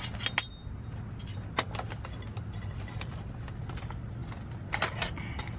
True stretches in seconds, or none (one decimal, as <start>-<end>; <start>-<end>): 0.0-5.6